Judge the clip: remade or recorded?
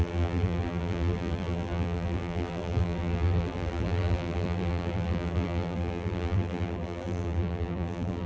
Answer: remade